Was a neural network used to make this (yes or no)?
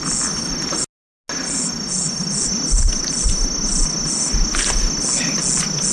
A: no